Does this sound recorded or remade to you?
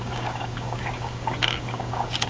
remade